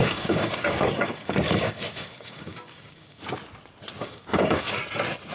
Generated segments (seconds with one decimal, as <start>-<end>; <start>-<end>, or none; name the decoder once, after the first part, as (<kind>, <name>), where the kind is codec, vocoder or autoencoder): 0.0-3.2 (codec, DAC); 4.0-4.8